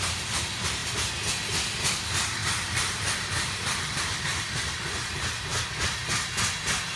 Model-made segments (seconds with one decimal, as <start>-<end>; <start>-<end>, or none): 0.8-1.3; 2.4-4.2; 5.5-6.3